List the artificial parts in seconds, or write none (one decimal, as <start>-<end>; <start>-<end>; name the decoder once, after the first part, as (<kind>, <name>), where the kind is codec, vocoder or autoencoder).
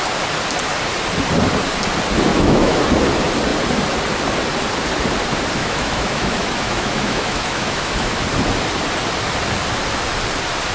2.3-2.8 (autoencoder, DAC-VAE); 5.6-8.1